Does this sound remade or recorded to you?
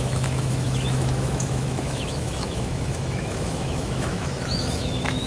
remade